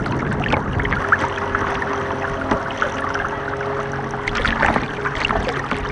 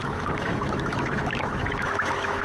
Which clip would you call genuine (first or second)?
first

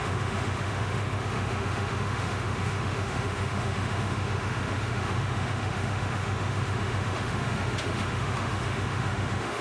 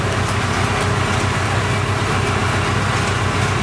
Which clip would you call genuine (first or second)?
second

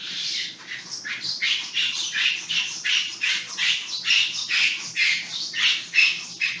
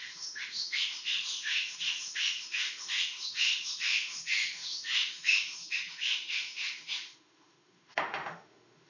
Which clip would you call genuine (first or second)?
first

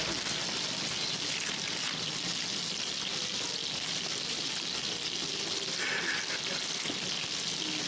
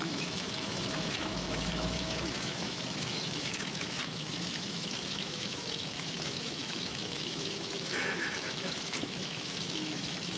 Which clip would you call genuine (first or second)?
first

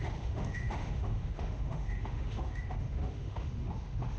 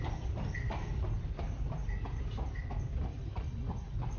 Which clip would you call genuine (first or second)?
second